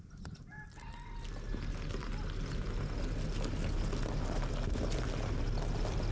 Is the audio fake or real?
real